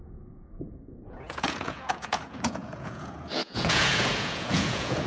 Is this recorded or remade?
remade